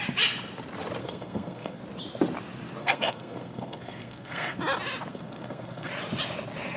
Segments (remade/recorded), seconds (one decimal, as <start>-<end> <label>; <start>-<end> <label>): 0.0-1.0 recorded; 1.0-1.8 remade; 1.8-2.8 recorded; 2.8-4.6 remade; 4.6-5.1 recorded; 5.1-5.9 remade; 5.9-6.8 recorded